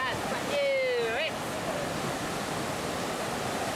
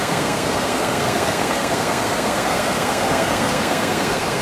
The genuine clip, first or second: first